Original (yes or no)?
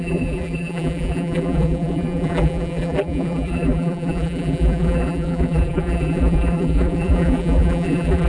no